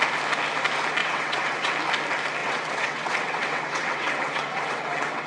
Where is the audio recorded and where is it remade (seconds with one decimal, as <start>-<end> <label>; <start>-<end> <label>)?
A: 0.0-1.0 recorded; 1.0-1.7 remade; 1.7-2.4 recorded; 2.4-5.3 remade